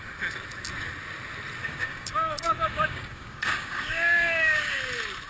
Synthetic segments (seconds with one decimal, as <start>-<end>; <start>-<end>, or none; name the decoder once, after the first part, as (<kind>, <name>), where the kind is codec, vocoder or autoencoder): 1.6-4.8 (codec, DAC)